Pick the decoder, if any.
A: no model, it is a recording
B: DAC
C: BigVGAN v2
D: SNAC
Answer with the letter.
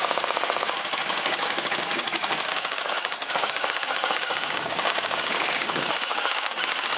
B